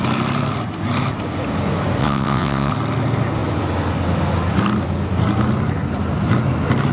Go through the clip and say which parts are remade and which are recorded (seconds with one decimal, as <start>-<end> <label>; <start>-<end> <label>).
0.0-2.0 recorded; 2.0-2.7 remade; 2.7-6.9 recorded